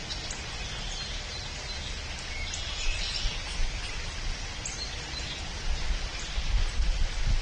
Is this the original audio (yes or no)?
yes